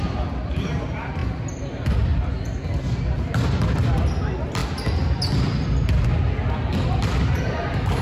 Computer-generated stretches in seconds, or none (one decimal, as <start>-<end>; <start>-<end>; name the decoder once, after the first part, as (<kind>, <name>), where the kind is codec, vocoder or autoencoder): none